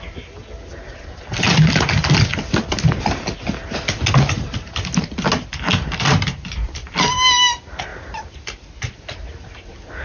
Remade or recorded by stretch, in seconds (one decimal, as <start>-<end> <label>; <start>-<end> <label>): 0.0-10.0 recorded